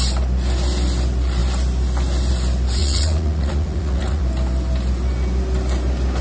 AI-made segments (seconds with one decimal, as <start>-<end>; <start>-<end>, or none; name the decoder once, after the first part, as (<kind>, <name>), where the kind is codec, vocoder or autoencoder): 2.8-4.2 (vocoder, Vocos)

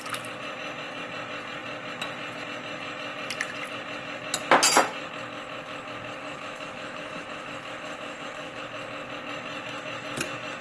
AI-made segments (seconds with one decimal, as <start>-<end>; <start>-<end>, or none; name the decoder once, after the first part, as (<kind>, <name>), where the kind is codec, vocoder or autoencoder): 6.2-8.6 (autoencoder, DAC-VAE)

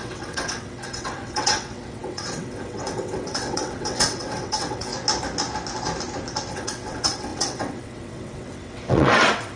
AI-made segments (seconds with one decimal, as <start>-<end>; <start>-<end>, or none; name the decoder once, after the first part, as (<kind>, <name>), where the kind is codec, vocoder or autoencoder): 0.0-4.9 (vocoder, WaveNeXt); 6.5-9.6

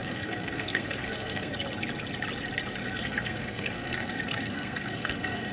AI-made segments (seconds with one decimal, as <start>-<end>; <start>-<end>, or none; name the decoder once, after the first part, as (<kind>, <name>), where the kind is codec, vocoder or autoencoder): 0.0-1.5 (codec, SNAC); 2.8-5.5

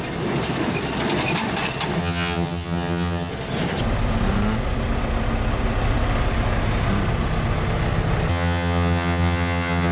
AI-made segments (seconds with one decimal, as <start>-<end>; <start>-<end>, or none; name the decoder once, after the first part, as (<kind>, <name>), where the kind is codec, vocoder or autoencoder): 2.0-3.3 (vocoder, HiFi-GAN); 8.3-9.9

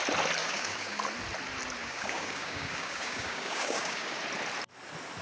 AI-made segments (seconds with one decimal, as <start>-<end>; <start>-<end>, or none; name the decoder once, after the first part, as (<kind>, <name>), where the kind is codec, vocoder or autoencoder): 0.4-1.0 (codec, DAC); 1.8-4.2